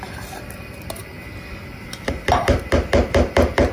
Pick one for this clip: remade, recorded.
remade